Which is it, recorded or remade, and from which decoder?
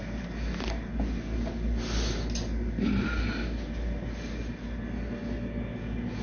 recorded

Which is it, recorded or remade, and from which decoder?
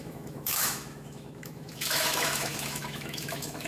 remade, autoencoder, DAC-VAE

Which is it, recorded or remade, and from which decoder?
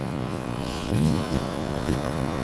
remade, vocoder, Vocos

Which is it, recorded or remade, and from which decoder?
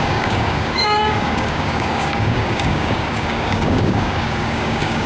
remade, codec, DAC